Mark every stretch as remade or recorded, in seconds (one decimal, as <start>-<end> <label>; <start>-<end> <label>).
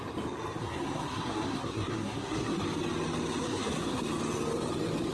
0.0-0.6 recorded; 0.6-2.6 remade; 2.6-3.4 recorded; 3.4-4.1 remade; 4.1-5.1 recorded